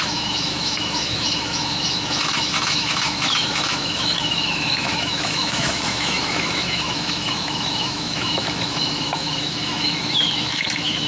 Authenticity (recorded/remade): remade